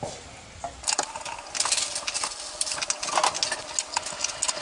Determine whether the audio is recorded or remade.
recorded